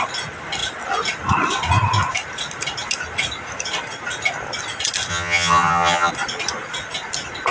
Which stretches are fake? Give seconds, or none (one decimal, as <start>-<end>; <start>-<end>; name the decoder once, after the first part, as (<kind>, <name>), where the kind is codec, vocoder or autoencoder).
5.1-6.1 (vocoder, HiFi-GAN)